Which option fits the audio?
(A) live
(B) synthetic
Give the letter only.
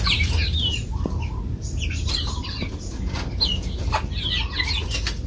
A